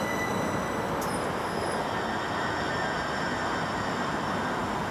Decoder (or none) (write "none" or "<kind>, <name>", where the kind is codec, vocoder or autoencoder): none